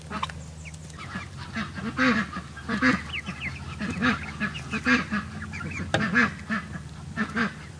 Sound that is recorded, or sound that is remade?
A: recorded